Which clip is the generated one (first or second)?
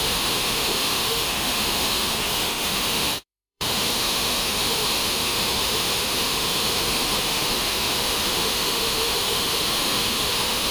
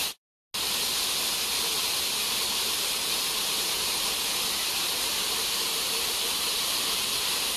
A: first